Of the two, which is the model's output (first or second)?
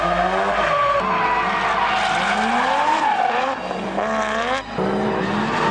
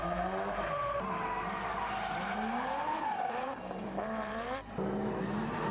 second